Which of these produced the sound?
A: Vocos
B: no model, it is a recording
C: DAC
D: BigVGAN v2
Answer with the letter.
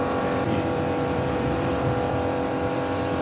D